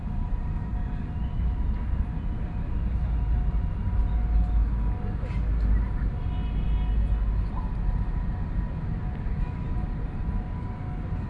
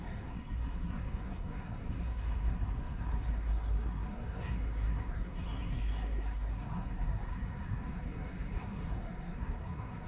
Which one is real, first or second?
first